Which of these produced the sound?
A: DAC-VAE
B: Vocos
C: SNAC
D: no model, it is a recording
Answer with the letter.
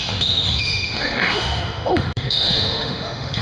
A